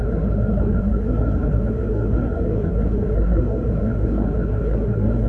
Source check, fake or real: fake